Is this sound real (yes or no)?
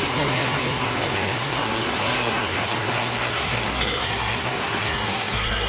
no